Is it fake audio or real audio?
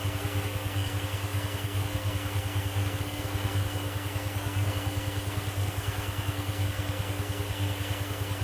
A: fake